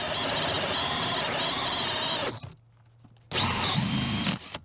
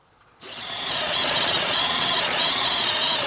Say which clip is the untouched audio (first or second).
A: first